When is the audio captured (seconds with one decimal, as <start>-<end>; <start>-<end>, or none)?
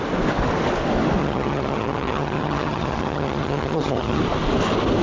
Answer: 0.0-1.2; 4.2-5.0